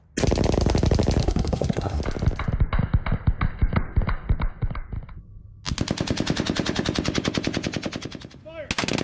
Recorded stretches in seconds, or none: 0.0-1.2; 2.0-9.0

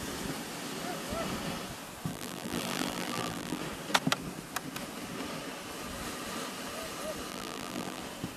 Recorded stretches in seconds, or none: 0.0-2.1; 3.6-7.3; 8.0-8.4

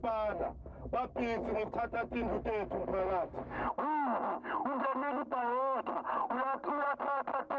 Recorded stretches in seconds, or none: 0.0-7.6